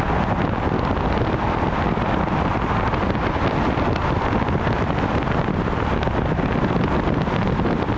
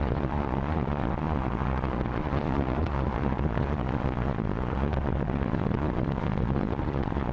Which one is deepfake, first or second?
second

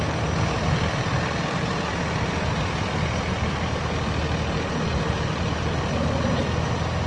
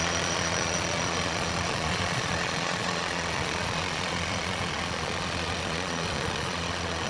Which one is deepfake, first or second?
second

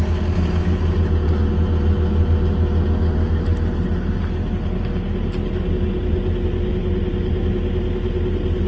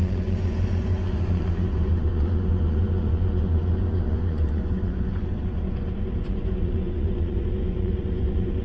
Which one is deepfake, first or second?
second